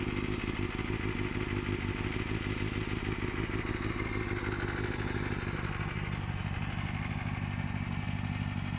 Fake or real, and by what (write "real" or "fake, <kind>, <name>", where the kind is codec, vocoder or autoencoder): real